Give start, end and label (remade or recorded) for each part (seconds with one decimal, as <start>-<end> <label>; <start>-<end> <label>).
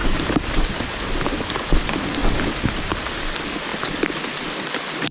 0.0-2.2 remade; 2.2-2.7 recorded; 2.7-3.7 remade; 3.7-4.6 recorded; 4.6-5.1 remade